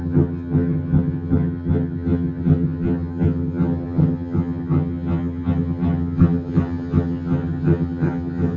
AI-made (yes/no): yes